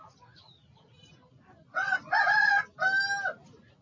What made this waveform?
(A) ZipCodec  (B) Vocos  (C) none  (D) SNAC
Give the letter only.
C